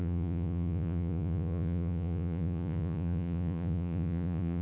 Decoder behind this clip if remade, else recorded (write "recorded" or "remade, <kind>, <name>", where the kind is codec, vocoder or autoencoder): remade, vocoder, Vocos